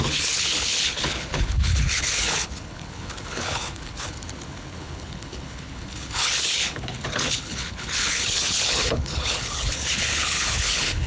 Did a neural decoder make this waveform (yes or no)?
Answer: yes